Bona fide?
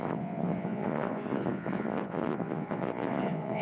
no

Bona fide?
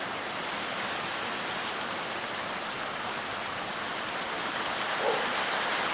yes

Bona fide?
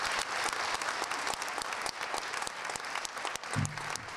yes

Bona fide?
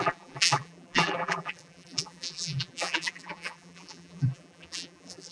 no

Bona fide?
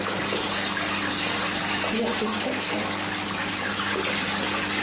yes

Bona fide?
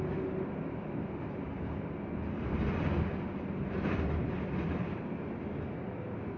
yes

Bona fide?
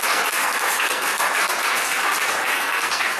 no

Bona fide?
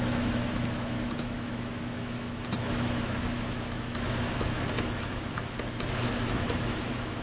no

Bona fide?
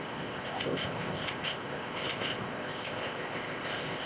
no